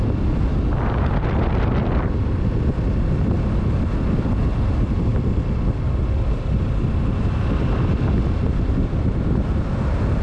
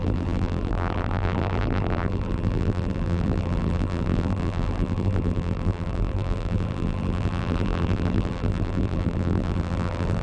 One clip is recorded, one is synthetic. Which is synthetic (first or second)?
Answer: second